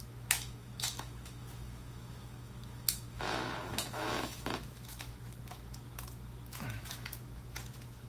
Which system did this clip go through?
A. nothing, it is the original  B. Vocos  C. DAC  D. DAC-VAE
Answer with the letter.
D